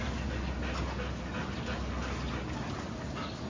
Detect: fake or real real